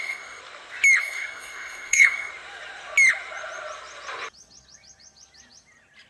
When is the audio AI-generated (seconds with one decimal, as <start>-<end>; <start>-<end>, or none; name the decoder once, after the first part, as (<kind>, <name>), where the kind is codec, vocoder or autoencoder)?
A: 0.0-0.4 (codec, SNAC); 1.0-2.3